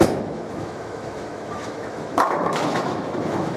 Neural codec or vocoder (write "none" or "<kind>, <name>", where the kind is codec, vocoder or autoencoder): autoencoder, DAC-VAE